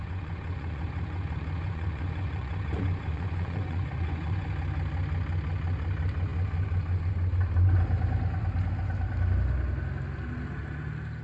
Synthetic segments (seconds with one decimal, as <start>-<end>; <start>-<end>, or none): 0.0-4.5